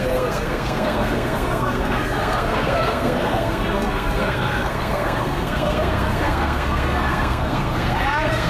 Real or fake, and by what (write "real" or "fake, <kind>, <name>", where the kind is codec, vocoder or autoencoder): fake, codec, SNAC